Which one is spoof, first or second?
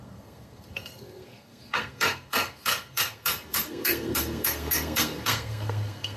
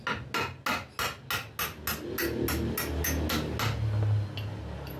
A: first